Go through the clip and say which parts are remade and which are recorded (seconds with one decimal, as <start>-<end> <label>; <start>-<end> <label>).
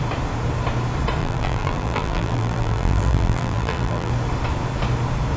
0.0-1.2 recorded; 1.2-4.1 remade; 4.1-5.4 recorded